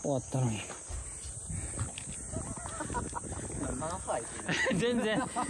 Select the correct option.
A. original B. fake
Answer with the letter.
A